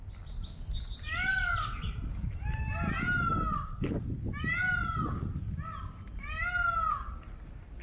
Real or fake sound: real